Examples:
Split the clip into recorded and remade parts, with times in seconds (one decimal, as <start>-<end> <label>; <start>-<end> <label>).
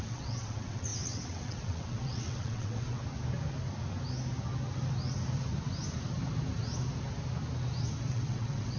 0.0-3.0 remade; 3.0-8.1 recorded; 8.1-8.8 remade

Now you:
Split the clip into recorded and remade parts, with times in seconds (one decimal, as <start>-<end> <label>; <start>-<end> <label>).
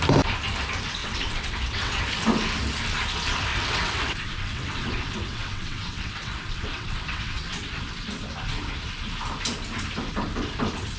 0.0-1.0 recorded; 1.0-2.0 remade; 2.0-3.5 recorded; 3.5-7.8 remade; 7.8-11.0 recorded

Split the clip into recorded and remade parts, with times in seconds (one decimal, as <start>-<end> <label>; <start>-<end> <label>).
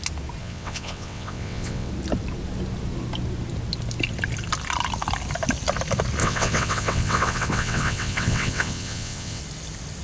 0.0-0.4 recorded; 0.4-1.9 remade; 1.9-6.2 recorded; 6.2-9.4 remade; 9.4-10.0 recorded